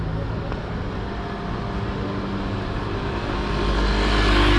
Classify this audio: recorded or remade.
recorded